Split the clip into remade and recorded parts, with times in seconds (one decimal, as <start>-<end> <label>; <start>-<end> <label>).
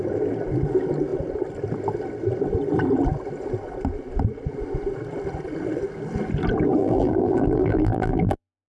0.0-6.8 recorded; 6.8-8.7 remade